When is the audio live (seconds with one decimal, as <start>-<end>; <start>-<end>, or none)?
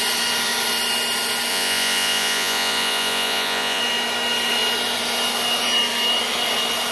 0.0-1.5; 3.8-6.9